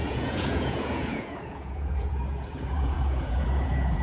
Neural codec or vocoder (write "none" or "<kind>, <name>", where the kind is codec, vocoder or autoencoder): vocoder, Vocos